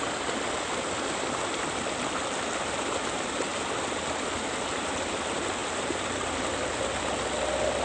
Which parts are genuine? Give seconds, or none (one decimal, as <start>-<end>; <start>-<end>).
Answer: 0.0-3.5; 4.9-5.6; 6.3-7.8